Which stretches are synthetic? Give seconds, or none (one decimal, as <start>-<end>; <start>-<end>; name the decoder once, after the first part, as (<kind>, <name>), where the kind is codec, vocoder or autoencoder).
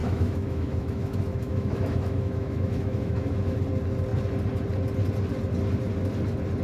0.0-3.6 (autoencoder, DAC-VAE)